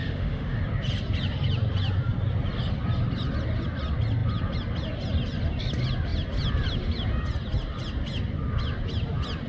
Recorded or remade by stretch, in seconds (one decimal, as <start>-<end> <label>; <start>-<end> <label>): 0.0-0.6 remade; 0.6-9.5 recorded